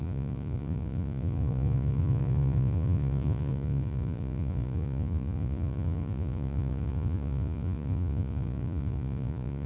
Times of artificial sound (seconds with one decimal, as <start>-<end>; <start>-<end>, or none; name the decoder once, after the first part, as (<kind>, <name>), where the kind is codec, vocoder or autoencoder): 0.0-9.7 (vocoder, Vocos)